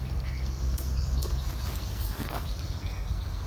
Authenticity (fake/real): fake